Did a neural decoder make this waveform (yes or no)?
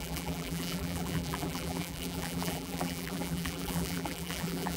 yes